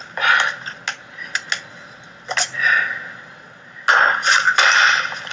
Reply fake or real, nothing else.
real